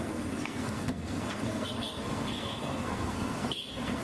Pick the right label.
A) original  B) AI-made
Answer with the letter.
B